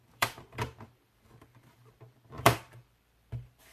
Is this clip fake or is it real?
fake